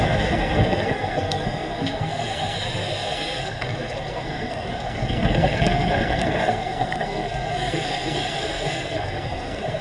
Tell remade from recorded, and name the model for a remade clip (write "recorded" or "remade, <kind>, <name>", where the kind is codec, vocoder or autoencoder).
remade, codec, SNAC